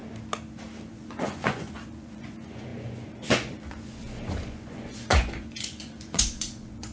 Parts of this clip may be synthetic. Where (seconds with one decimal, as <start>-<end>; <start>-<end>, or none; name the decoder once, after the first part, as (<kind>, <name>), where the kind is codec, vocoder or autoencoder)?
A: 0.9-6.9 (vocoder, Vocos)